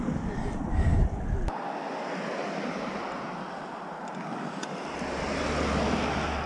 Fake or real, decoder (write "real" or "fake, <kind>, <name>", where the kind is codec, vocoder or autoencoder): real